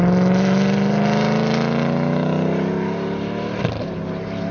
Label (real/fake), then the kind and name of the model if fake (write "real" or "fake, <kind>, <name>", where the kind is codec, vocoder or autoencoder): real